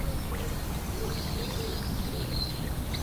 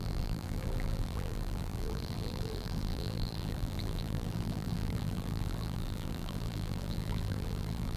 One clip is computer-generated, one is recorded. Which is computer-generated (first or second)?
second